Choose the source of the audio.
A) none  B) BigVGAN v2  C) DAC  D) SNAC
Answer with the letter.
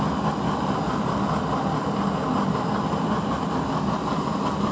A